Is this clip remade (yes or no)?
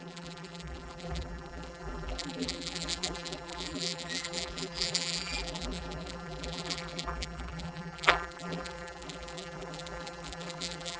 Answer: yes